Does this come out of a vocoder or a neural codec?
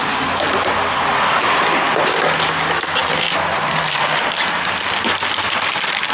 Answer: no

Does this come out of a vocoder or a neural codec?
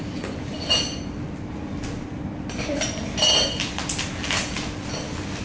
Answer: no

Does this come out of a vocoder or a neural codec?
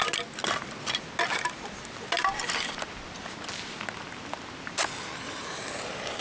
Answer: no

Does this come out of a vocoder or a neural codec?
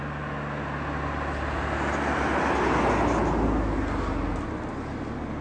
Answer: no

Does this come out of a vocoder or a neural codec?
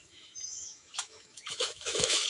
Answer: yes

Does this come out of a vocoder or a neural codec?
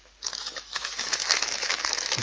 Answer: yes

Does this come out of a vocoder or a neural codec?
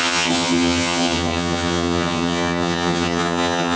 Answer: yes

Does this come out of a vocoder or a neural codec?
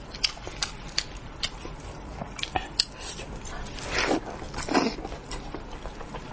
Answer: no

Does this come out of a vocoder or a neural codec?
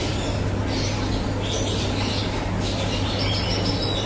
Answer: no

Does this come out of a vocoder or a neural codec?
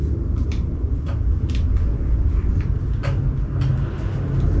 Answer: no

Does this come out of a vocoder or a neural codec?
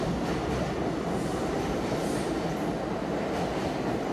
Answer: no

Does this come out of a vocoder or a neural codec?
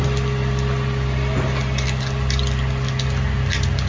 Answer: no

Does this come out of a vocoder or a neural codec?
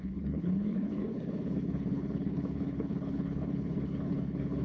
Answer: yes